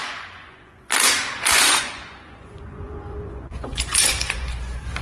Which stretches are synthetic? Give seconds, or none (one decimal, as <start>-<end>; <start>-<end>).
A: 0.0-5.0